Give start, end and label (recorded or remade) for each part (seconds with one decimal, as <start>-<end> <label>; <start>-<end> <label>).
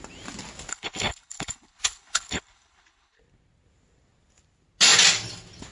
0.0-0.7 recorded; 0.7-3.2 remade; 3.2-5.7 recorded